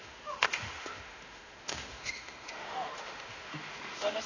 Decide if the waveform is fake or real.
fake